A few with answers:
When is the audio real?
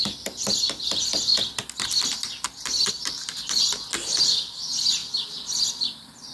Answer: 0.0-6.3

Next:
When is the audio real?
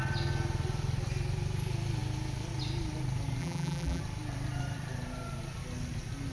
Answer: 0.0-3.4; 4.0-6.3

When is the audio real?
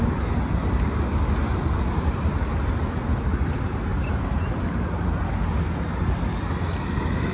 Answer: 0.0-3.9; 5.2-7.3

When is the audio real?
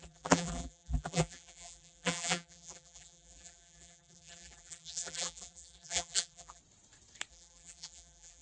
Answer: 6.6-7.3